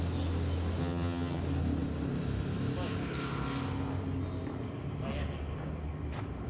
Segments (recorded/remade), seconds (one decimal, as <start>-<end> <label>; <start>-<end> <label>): 0.0-0.8 recorded; 0.8-1.4 remade; 1.4-6.5 recorded